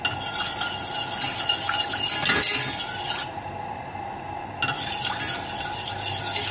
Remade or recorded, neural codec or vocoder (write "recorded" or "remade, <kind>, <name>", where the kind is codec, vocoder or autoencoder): recorded